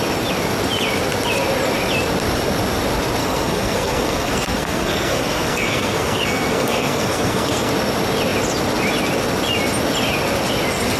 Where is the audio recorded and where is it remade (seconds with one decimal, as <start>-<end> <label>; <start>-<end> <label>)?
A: 0.0-3.2 recorded; 3.2-7.7 remade; 7.7-11.0 recorded